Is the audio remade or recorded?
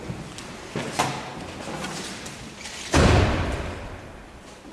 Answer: recorded